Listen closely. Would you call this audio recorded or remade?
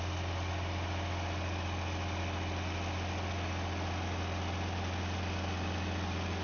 recorded